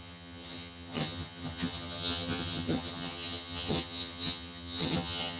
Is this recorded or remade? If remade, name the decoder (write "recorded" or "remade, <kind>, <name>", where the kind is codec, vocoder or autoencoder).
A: remade, vocoder, HiFi-GAN